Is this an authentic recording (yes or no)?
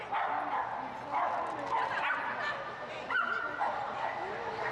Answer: yes